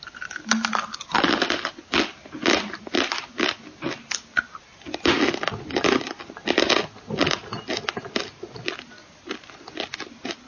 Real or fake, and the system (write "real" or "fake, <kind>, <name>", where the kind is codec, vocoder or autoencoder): real